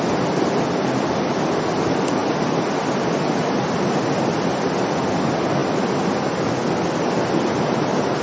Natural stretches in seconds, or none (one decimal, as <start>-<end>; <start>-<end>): 0.0-8.2